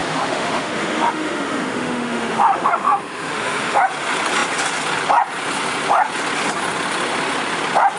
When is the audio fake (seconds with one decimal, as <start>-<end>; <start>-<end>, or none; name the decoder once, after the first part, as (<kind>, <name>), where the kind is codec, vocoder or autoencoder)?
0.0-3.8 (autoencoder, DAC-VAE)